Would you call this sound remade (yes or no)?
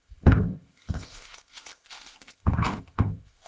yes